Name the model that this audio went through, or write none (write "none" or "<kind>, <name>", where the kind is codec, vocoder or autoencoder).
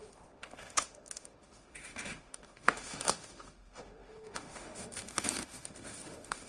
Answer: autoencoder, DAC-VAE